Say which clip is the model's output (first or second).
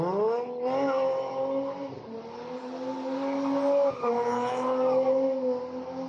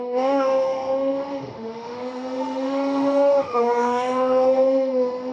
second